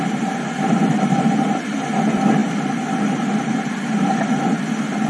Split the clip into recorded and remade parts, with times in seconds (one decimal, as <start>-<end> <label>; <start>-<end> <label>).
0.0-5.1 recorded